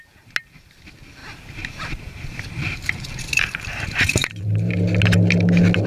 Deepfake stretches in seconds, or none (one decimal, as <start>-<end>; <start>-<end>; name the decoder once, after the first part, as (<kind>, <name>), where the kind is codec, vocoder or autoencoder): 1.2-4.7 (vocoder, BigVGAN v2)